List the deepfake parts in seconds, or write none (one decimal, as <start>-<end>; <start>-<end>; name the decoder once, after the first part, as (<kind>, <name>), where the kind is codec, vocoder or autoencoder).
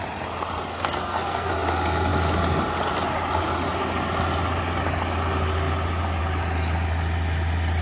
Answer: 0.7-1.5 (codec, SNAC)